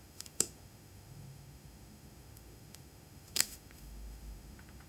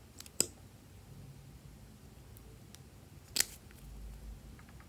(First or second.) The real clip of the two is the second